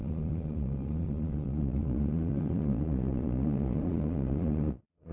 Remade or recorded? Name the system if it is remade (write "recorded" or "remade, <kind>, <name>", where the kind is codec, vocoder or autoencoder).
remade, vocoder, Vocos